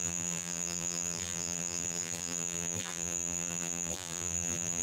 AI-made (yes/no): yes